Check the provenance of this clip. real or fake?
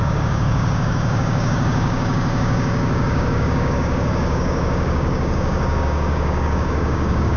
fake